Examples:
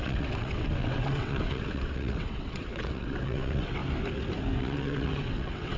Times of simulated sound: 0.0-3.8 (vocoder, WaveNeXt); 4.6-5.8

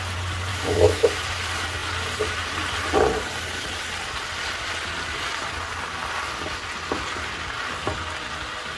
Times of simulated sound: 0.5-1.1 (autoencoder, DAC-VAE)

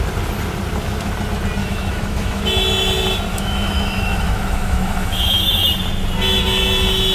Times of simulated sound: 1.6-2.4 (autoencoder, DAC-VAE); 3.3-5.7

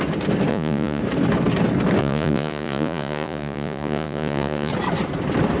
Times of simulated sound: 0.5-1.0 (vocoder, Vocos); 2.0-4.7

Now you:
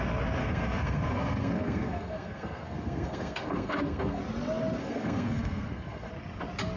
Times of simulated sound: 0.4-4.2 (codec, SNAC); 4.8-6.1

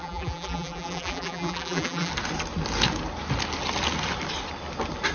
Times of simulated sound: 0.0-2.1 (vocoder, BigVGAN v2)

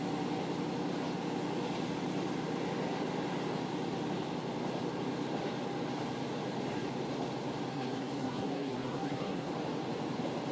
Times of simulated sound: 7.7-9.5 (codec, SNAC)